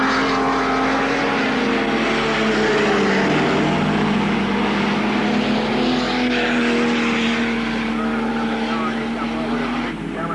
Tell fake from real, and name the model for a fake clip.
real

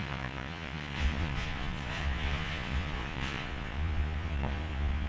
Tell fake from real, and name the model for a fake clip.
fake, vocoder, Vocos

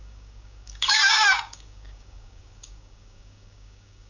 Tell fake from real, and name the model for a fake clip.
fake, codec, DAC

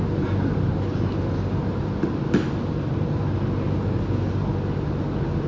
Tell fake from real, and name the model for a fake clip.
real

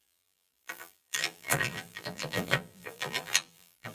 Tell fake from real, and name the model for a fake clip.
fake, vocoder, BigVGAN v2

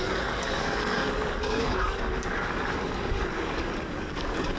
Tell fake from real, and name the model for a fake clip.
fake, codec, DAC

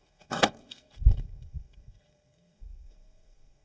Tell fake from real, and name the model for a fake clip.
fake, codec, SNAC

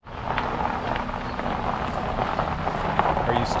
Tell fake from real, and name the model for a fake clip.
real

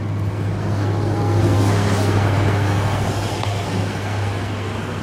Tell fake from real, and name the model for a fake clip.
fake, codec, SNAC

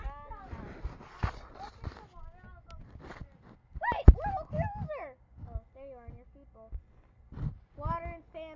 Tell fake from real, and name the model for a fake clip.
real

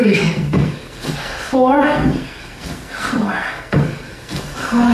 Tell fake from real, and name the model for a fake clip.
fake, codec, SNAC